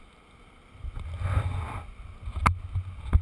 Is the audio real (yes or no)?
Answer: yes